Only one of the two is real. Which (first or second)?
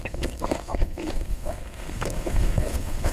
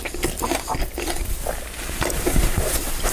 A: second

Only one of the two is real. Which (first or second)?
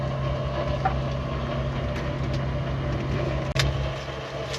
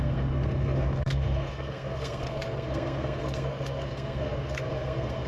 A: first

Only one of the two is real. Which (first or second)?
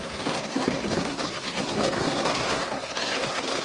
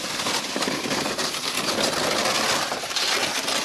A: second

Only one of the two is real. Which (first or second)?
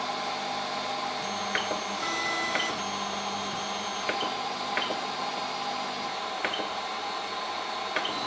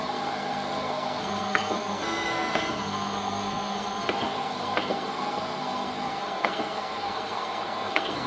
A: first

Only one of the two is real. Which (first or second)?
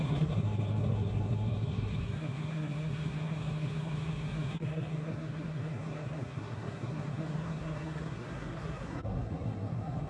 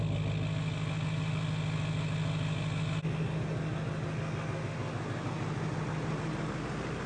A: second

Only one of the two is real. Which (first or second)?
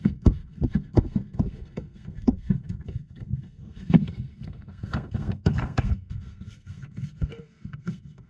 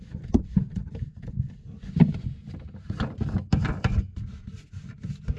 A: second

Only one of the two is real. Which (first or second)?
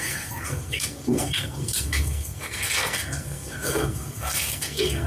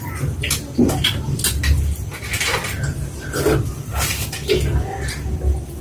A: second